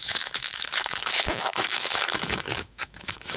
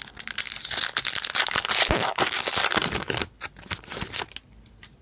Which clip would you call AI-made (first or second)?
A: first